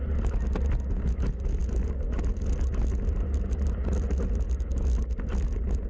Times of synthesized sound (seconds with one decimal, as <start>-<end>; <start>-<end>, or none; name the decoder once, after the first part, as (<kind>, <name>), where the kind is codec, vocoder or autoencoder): none